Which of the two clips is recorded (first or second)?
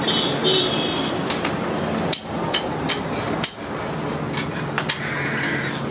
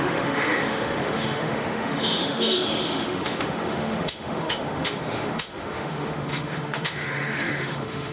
first